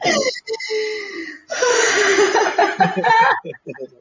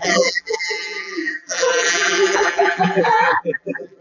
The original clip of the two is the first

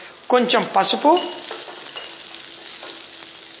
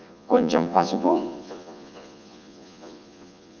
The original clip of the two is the first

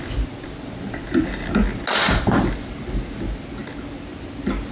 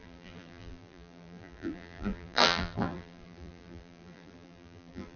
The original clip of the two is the first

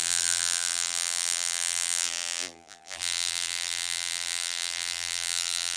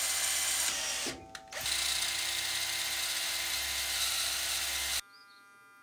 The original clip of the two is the second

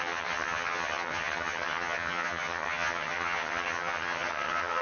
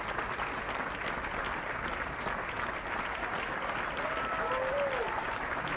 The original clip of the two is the second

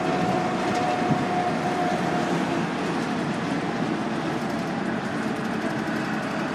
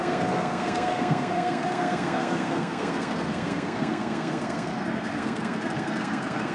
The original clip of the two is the first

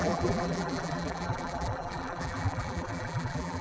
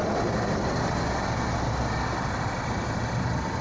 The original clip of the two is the second